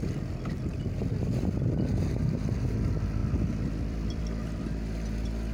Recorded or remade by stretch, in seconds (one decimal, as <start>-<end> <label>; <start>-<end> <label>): 0.0-3.2 recorded; 3.2-4.2 remade; 4.2-5.5 recorded